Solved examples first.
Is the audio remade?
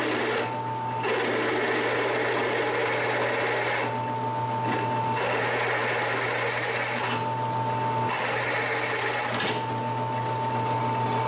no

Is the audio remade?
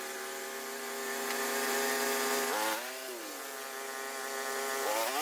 no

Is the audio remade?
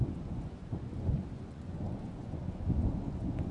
yes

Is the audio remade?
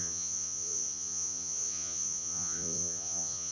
yes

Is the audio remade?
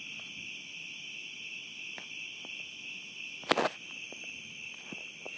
no